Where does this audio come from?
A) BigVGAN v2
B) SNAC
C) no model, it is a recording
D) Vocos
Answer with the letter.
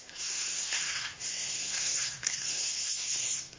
B